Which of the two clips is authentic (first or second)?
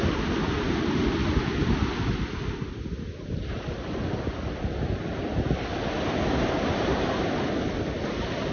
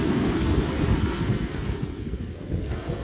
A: first